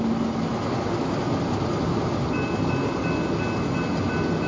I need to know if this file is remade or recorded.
recorded